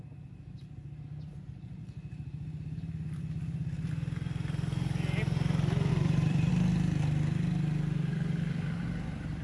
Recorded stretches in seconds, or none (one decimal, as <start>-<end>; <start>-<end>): 0.0-5.9; 6.5-9.4